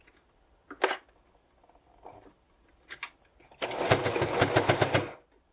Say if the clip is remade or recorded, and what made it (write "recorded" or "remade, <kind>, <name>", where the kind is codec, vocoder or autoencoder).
recorded